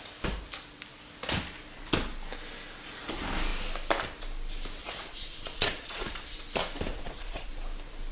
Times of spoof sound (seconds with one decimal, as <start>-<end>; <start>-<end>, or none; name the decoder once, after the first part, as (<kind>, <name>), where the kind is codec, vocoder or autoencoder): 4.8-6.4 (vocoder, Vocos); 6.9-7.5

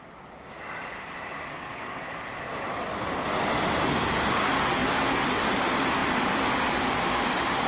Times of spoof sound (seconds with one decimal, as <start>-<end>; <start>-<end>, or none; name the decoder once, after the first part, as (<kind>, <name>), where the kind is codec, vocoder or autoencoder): 1.5-2.1 (codec, SNAC)

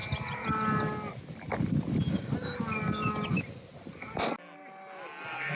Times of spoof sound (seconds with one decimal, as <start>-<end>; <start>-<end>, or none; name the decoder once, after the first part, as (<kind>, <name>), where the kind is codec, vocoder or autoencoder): none

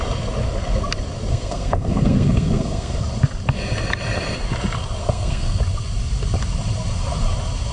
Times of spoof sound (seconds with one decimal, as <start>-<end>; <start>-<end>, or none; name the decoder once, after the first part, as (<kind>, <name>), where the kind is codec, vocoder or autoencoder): 1.3-3.0 (codec, SNAC); 5.0-5.6

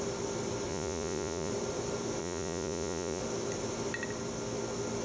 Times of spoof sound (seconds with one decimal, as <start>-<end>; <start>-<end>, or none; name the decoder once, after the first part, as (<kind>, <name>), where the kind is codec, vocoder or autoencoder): 0.7-1.5 (vocoder, Vocos); 2.2-3.2